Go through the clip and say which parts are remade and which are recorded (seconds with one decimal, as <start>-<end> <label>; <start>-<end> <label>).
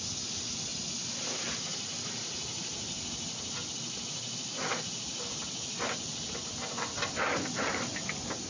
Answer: 0.0-8.5 recorded